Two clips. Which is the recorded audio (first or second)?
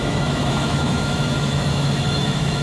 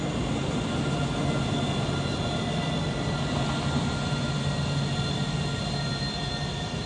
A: second